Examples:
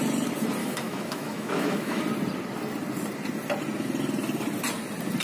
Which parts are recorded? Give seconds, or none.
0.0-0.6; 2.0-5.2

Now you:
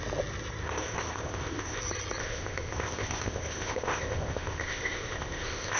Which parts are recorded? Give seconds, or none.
0.0-0.6; 1.8-2.2

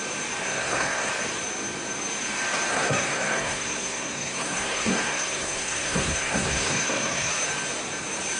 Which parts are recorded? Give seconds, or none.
0.0-0.4; 1.1-2.7; 7.3-8.4

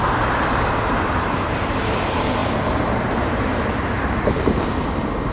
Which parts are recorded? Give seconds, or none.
none

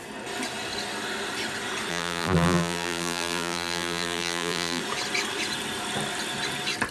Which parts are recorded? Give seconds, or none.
0.0-1.9; 4.8-6.9

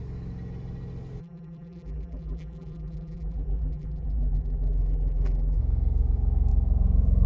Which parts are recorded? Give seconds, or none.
0.0-1.2; 5.6-7.3

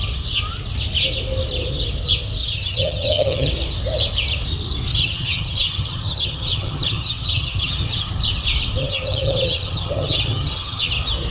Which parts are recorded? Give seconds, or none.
0.0-2.4; 3.5-4.9; 8.1-8.8; 10.9-11.3

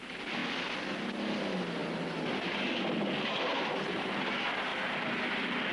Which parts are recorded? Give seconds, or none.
0.0-5.7